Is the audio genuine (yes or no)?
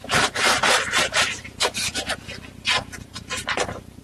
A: no